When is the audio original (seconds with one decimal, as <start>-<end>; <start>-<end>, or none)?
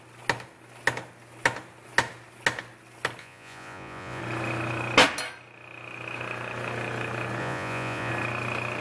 0.0-3.2; 4.2-7.4; 8.1-8.8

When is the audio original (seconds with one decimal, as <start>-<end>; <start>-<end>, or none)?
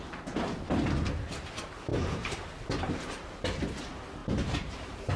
0.0-1.9; 2.5-4.2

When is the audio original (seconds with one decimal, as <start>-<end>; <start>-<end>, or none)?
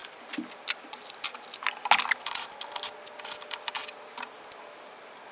0.0-5.3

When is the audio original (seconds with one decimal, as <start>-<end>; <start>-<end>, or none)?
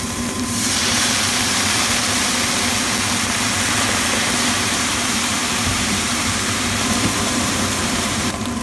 1.9-4.2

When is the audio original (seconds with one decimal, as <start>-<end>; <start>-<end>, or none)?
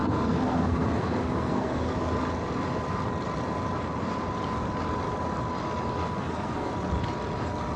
1.9-6.0; 6.7-7.8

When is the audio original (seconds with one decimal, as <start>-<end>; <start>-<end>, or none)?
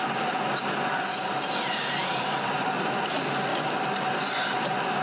0.0-2.0; 3.1-3.5; 4.1-5.0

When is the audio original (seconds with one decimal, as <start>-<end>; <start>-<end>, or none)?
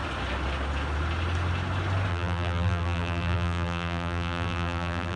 0.0-2.1